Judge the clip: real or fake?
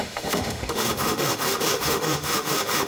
fake